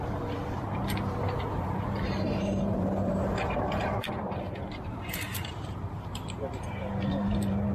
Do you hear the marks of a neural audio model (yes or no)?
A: yes